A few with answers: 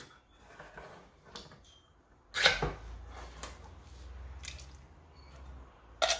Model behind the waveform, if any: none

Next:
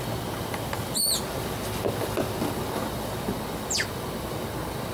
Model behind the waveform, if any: none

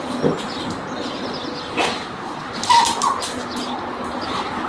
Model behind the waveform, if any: none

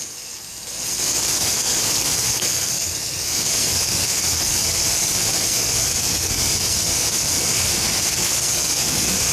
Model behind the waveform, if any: codec, SNAC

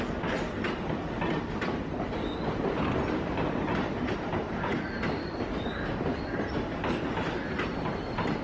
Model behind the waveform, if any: none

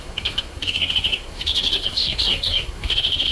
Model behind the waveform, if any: codec, SNAC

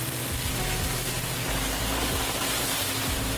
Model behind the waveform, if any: none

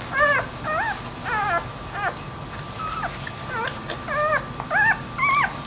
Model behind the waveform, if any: none